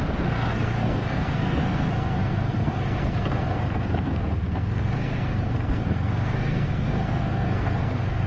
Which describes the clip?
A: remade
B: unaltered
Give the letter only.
A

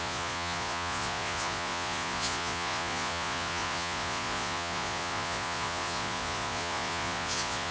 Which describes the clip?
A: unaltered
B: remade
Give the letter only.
B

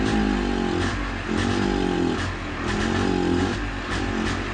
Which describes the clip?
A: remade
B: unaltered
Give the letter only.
B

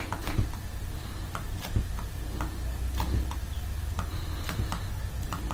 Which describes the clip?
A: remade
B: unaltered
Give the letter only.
B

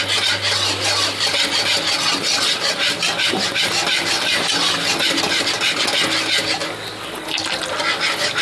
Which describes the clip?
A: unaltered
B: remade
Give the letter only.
A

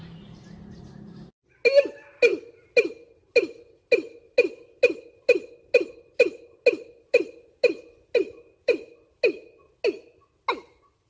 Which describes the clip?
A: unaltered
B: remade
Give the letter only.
A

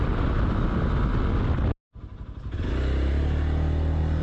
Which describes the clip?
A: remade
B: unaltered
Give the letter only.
B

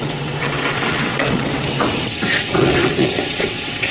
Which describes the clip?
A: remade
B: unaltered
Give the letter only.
A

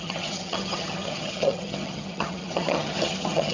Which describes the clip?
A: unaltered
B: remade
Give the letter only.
B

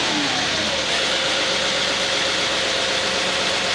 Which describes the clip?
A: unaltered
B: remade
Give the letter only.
A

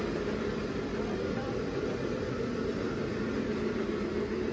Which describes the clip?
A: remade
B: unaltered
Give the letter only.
B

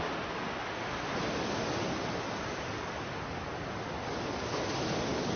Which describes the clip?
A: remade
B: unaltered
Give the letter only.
B